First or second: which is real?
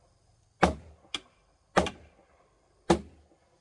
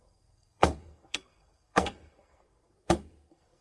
first